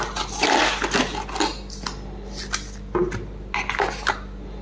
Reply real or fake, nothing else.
real